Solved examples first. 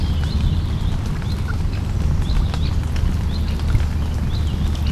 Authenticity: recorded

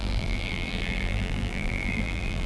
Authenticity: remade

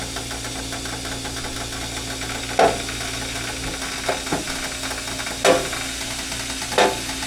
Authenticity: recorded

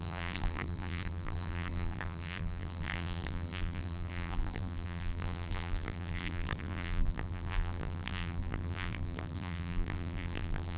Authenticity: remade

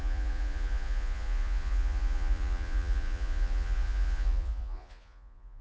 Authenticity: remade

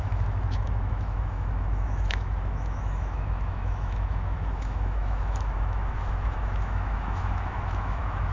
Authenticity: remade